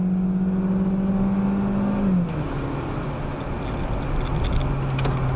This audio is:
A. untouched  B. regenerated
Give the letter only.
A